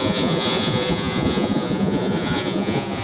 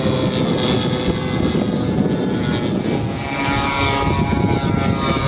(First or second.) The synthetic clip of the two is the first